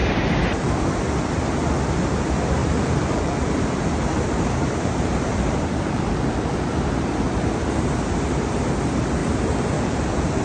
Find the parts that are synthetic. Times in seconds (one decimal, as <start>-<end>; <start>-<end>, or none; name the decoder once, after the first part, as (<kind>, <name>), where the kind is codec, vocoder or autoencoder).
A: 0.0-0.7 (vocoder, BigVGAN v2); 2.6-6.7; 9.2-10.4